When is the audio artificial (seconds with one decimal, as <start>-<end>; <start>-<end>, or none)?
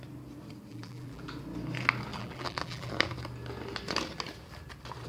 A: 0.7-1.2; 2.1-2.9